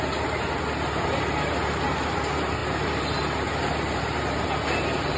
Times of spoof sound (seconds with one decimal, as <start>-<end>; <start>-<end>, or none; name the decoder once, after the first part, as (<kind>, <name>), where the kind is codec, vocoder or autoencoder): none